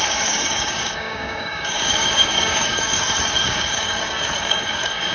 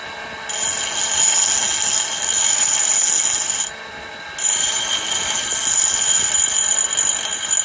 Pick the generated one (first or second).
first